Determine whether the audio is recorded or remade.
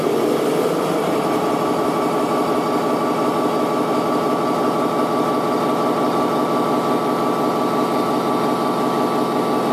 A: recorded